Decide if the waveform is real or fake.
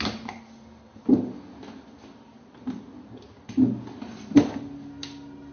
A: real